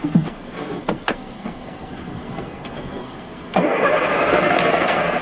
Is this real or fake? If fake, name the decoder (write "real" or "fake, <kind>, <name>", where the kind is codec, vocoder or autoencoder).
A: fake, codec, SNAC